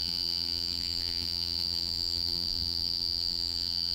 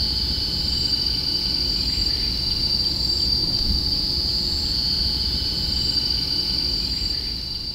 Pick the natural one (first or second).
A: second